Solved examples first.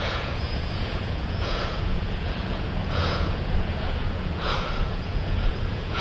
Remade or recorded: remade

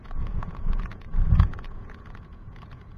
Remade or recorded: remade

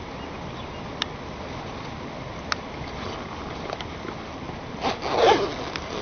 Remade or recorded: recorded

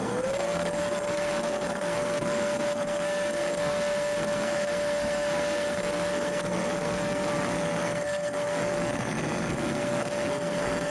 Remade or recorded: remade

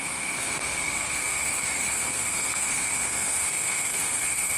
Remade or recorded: remade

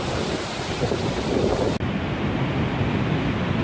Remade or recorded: recorded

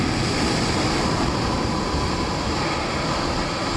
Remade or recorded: recorded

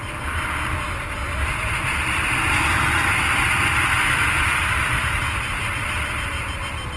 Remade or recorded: recorded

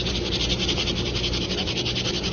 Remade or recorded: recorded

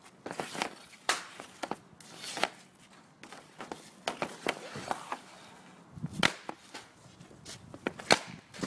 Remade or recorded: recorded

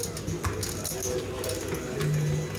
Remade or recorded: recorded